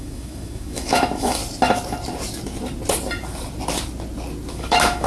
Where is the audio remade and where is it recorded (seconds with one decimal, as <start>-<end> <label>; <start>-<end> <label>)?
0.0-1.4 remade; 1.4-4.5 recorded; 4.5-5.1 remade